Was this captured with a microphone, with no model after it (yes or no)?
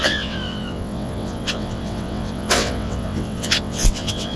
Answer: no